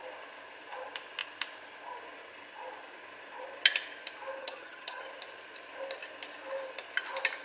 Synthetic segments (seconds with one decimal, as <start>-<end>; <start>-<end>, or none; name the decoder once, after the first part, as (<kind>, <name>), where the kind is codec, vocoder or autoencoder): 4.4-5.0 (vocoder, HiFi-GAN)